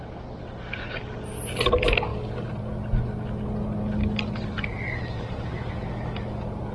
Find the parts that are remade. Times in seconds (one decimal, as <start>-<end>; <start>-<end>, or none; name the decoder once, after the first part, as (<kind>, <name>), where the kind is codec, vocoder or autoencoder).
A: none